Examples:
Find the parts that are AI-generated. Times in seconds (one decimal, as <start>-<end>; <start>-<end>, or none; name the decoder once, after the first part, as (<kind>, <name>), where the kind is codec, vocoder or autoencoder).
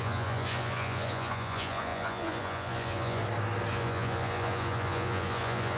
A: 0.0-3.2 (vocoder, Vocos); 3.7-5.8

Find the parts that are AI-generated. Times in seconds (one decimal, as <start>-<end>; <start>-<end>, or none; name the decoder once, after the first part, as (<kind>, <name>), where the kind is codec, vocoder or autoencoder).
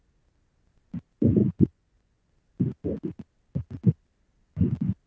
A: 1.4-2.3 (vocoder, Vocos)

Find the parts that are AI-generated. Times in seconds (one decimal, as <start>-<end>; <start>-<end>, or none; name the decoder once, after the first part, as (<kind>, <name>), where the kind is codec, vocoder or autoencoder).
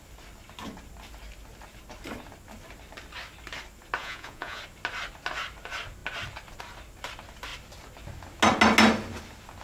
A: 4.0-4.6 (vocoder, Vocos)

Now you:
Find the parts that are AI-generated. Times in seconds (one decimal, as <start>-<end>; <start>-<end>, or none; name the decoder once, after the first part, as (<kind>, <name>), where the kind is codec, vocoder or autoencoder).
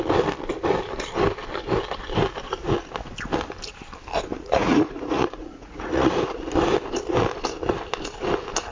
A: 4.3-6.4 (vocoder, Vocos)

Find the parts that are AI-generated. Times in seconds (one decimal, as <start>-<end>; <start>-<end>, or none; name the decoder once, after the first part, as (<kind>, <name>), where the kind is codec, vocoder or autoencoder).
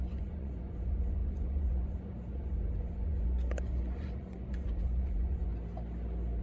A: 0.0-5.5 (vocoder, Vocos)